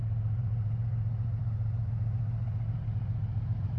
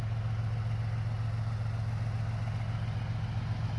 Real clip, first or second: second